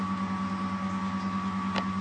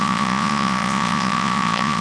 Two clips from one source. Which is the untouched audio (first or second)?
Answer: first